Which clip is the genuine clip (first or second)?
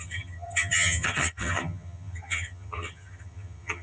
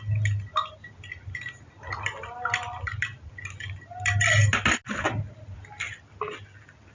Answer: second